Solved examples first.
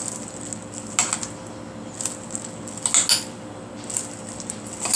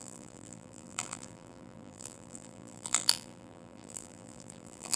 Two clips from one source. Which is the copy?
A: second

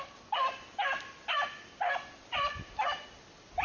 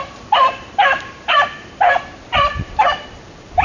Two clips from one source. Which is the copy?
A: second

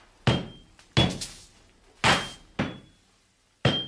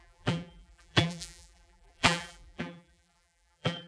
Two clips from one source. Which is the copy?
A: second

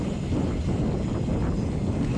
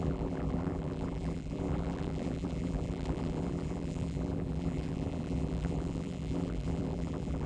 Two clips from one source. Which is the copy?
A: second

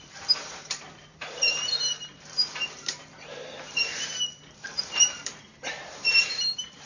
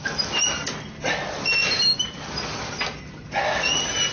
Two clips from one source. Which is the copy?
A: first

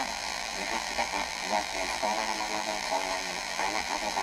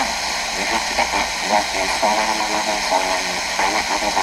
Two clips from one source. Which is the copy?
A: first